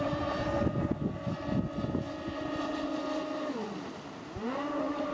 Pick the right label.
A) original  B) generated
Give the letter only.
A